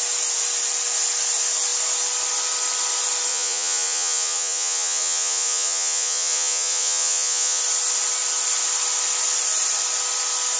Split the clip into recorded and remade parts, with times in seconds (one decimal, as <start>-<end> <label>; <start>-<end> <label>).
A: 0.0-3.3 recorded; 3.3-7.6 remade; 7.6-10.6 recorded